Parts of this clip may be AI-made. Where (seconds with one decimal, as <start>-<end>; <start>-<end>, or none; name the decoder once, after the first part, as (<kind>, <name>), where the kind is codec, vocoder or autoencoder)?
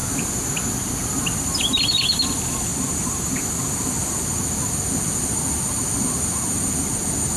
2.7-3.3 (vocoder, BigVGAN v2)